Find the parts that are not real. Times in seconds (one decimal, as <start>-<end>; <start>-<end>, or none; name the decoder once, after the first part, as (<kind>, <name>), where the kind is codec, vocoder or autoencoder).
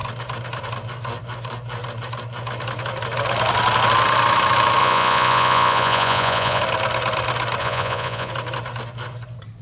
4.8-6.6 (vocoder, Vocos); 7.6-8.3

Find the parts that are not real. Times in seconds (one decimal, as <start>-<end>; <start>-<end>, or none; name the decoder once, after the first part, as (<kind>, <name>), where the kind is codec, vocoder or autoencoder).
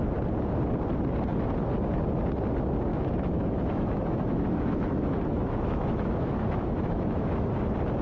2.9-7.5 (autoencoder, DAC-VAE)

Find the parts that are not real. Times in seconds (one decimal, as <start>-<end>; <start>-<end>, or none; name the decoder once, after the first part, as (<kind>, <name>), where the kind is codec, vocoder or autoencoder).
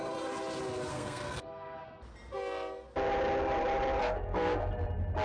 0.9-1.8 (codec, SNAC); 4.0-4.7